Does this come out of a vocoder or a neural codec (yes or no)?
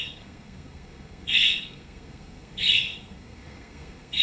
yes